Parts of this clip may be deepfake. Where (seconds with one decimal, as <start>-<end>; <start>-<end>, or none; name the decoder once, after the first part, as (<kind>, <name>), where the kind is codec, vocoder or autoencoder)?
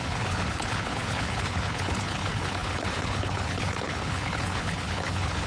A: 0.0-5.5 (codec, HILCodec)